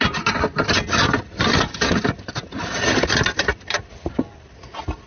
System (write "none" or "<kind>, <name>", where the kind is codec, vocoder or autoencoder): none